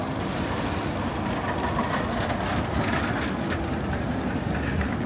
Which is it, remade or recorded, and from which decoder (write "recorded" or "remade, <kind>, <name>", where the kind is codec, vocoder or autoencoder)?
recorded